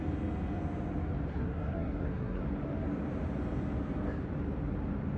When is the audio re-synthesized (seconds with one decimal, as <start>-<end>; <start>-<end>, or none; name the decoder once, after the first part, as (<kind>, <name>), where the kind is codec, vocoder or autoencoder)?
1.3-2.4 (codec, SNAC)